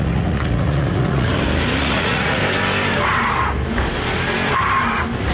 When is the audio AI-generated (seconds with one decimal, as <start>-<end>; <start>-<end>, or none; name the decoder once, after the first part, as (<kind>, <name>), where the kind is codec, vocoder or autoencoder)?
0.0-1.3 (vocoder, Vocos); 1.8-2.4